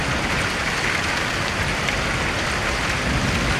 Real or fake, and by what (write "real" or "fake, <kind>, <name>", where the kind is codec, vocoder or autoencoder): real